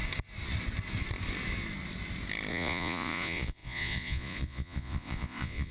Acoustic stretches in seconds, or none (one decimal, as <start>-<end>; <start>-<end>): 0.0-2.5